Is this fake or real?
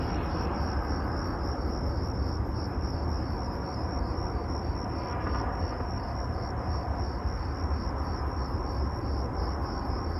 real